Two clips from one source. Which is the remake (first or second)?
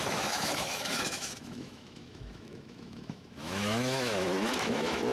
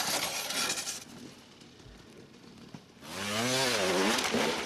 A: first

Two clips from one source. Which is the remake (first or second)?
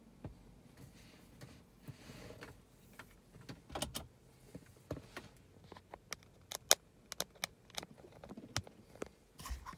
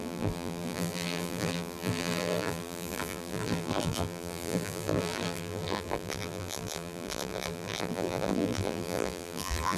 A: second